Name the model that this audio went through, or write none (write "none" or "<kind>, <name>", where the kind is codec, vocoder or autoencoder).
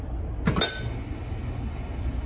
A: none